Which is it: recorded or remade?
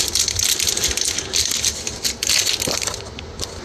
recorded